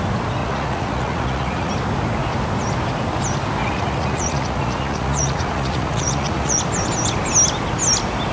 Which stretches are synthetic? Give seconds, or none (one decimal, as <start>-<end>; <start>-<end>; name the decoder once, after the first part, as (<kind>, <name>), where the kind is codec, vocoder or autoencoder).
0.4-1.7 (vocoder, Vocos); 3.6-6.6